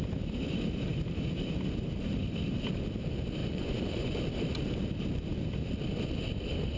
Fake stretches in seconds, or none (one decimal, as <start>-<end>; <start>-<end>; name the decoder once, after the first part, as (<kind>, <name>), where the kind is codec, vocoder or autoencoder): 3.4-4.2 (vocoder, Vocos)